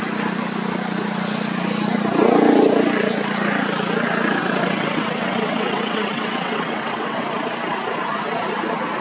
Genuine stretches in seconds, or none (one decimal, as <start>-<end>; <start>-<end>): 0.0-4.4; 7.2-9.0